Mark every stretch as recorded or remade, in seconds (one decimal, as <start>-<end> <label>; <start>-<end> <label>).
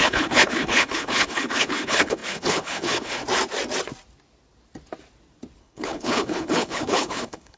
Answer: 0.0-3.2 remade; 3.2-5.6 recorded; 5.6-7.6 remade